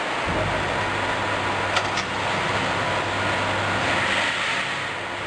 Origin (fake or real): real